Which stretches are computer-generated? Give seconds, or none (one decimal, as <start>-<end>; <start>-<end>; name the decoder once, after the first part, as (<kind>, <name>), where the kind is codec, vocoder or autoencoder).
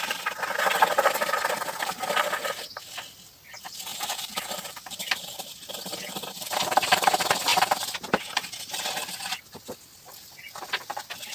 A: 3.9-7.1 (vocoder, BigVGAN v2)